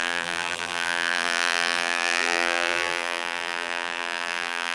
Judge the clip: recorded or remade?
remade